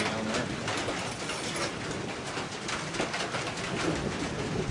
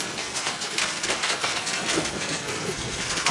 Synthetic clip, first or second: second